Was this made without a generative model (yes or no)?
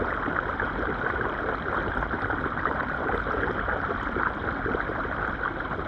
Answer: yes